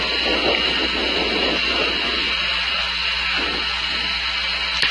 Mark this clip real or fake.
real